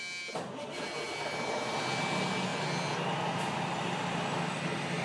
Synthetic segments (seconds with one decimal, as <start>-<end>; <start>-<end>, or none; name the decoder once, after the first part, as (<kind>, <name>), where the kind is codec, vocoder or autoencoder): none

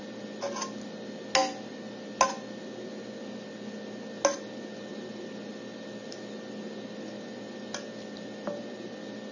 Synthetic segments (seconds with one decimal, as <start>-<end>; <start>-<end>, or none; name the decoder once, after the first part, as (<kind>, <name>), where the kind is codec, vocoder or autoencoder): none

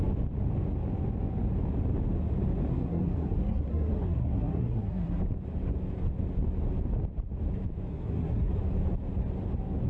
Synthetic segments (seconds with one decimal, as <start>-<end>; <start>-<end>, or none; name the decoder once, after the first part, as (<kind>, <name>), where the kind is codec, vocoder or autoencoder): 2.7-5.2 (codec, SNAC); 7.9-8.6

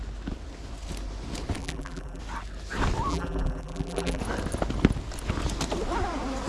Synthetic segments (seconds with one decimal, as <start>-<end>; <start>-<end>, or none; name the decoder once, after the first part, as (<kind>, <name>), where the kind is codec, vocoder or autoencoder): 1.6-2.2 (vocoder, BigVGAN v2); 3.1-4.2

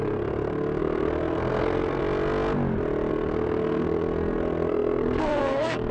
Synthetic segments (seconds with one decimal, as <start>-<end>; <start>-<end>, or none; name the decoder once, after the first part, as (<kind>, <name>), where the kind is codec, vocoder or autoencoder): 0.0-2.0 (codec, SNAC); 3.1-5.9

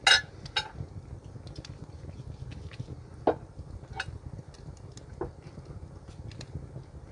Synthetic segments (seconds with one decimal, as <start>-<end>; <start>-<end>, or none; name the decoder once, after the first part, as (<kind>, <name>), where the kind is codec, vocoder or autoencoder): none

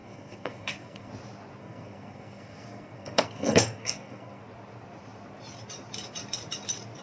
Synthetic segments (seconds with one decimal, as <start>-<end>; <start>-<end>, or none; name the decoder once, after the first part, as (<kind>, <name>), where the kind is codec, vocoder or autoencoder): 0.0-1.1 (codec, SNAC); 1.6-4.4